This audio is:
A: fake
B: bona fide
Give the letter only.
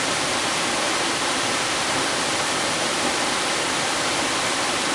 A